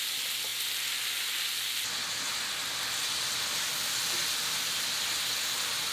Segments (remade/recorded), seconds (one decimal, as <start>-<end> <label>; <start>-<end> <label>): 0.0-5.9 recorded